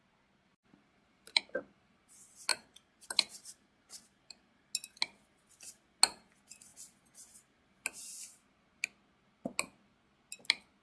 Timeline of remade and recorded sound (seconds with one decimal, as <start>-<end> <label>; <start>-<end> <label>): 0.0-0.5 recorded; 0.5-2.0 remade; 2.0-2.5 recorded; 2.5-4.7 remade; 4.7-10.8 recorded